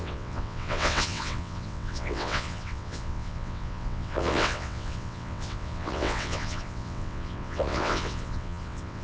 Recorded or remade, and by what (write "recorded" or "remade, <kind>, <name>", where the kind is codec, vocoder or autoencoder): remade, vocoder, WaveNeXt